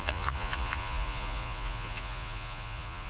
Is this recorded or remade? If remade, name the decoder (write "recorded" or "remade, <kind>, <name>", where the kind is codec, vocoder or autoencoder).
remade, vocoder, Vocos